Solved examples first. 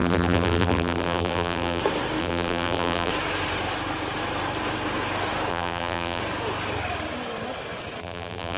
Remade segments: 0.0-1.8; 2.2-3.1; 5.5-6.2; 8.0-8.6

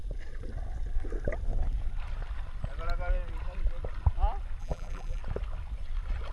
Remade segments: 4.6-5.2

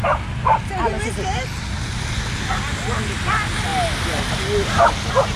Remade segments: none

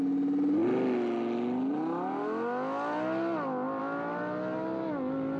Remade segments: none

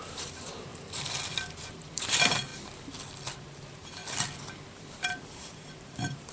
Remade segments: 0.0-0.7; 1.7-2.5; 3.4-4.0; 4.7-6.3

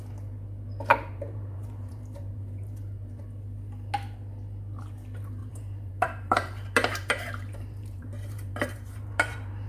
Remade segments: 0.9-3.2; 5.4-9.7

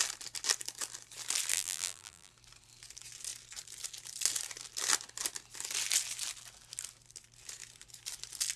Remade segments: 1.5-2.3

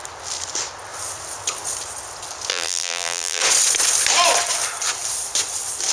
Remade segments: 2.5-3.4